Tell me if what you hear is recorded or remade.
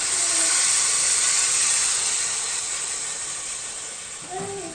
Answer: recorded